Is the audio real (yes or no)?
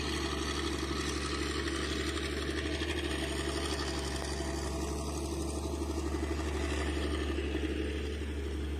yes